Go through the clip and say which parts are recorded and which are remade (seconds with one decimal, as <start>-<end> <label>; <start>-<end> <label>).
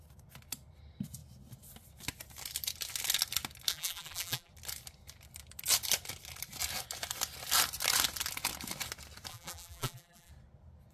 0.0-3.7 recorded; 3.7-4.5 remade; 4.5-9.3 recorded; 9.3-10.3 remade; 10.3-10.9 recorded